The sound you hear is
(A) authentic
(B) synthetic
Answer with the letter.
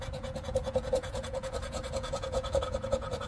B